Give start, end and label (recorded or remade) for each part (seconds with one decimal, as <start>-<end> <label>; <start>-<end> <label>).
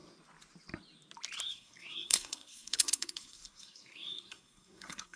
0.0-1.4 recorded; 1.4-5.2 remade